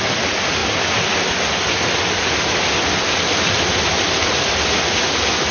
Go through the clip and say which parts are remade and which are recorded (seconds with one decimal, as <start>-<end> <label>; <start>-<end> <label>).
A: 0.0-5.5 recorded